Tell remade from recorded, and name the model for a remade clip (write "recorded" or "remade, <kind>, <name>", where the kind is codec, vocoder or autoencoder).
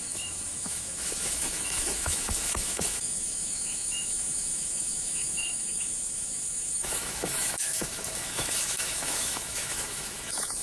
remade, autoencoder, DAC-VAE